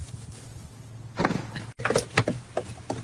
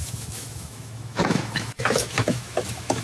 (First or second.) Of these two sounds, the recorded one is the first